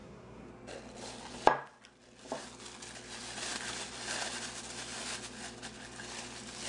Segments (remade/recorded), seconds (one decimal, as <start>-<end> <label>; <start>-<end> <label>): 0.0-0.5 remade; 0.5-6.7 recorded